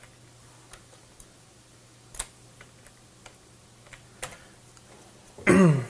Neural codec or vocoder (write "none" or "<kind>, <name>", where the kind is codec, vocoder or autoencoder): none